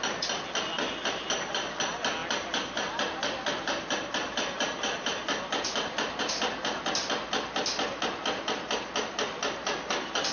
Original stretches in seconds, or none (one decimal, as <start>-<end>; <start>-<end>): 0.0-10.3